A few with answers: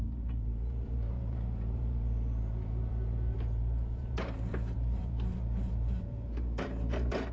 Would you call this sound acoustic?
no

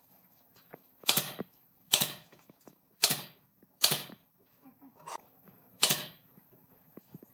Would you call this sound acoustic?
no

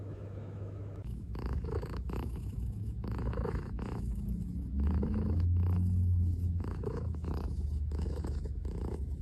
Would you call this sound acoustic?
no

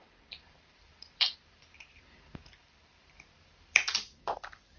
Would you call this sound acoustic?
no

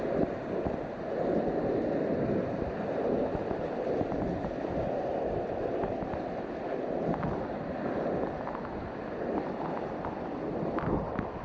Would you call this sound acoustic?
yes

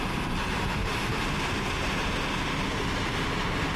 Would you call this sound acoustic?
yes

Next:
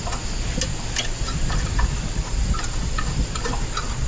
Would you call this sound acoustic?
yes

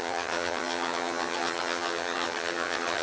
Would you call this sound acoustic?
no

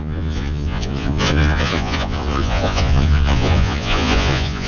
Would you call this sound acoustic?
no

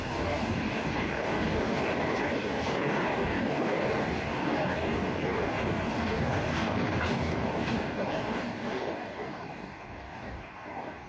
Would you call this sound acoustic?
no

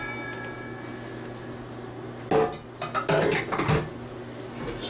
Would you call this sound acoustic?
yes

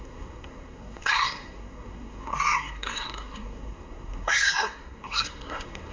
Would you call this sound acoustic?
no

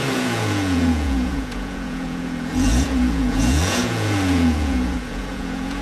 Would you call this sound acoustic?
no